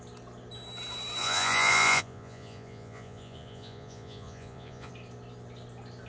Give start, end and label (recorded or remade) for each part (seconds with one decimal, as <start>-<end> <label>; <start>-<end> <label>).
0.0-1.2 recorded; 1.2-4.9 remade; 4.9-6.1 recorded